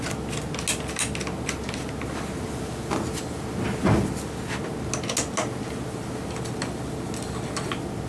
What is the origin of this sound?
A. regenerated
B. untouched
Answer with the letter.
B